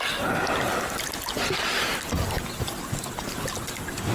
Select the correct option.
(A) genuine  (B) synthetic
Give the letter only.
A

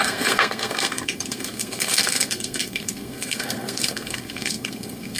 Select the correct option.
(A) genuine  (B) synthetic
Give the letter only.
B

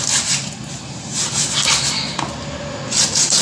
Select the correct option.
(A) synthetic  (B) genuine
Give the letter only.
B